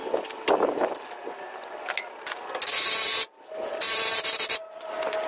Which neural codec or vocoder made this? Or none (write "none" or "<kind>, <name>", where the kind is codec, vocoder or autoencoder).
none